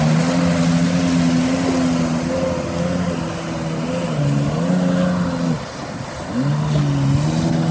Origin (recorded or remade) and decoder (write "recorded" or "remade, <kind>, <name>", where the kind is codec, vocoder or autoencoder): recorded